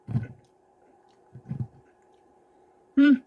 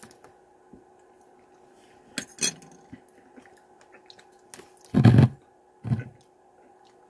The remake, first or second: first